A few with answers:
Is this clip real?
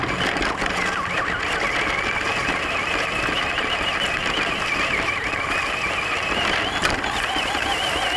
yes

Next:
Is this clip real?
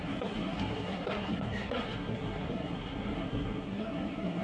no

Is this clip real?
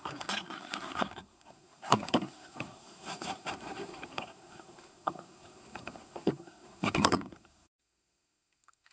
no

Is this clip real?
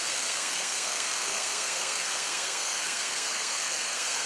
no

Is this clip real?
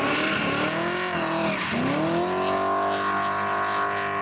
yes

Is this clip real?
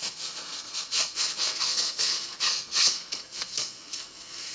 no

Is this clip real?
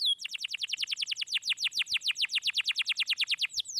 yes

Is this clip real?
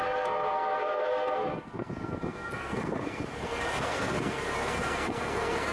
no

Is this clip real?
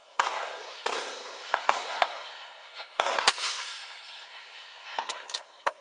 no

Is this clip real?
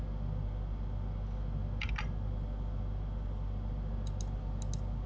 yes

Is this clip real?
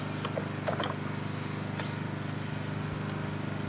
yes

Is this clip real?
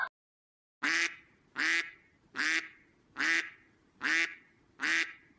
yes